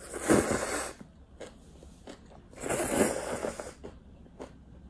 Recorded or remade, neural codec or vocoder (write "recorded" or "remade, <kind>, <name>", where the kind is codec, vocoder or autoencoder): recorded